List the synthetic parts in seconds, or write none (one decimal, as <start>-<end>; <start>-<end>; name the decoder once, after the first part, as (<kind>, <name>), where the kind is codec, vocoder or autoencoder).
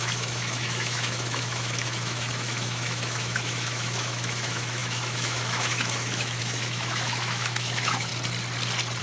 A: 0.0-8.1 (autoencoder, DAC-VAE)